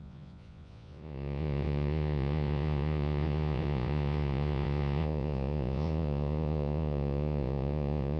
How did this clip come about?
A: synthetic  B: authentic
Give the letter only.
A